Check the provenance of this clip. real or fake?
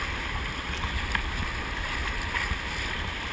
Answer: real